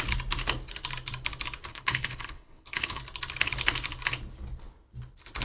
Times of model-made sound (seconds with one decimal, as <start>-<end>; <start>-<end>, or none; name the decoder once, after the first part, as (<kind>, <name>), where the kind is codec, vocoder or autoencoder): 1.7-3.0 (codec, HILCodec)

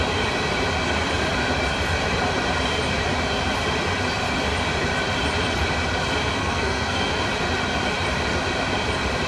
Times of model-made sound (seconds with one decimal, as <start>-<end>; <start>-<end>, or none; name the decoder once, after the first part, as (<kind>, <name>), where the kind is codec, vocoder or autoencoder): 6.4-7.1 (codec, SNAC)